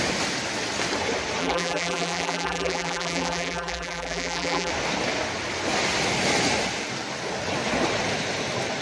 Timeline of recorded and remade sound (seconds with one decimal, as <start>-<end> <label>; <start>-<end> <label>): 0.0-1.4 recorded; 1.4-4.7 remade; 4.7-8.8 recorded